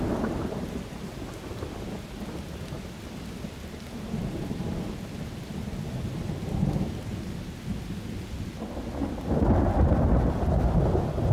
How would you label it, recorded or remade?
recorded